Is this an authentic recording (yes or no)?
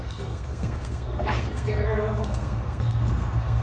no